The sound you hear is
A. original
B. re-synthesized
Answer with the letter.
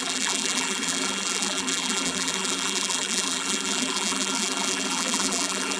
B